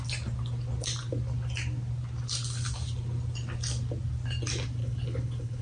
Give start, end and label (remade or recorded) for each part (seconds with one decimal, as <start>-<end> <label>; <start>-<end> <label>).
0.0-4.8 recorded; 4.8-5.6 remade